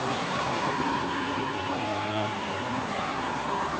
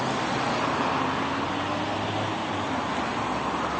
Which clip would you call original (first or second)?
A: second